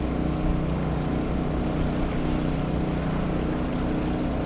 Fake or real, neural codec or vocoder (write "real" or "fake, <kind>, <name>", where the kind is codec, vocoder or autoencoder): real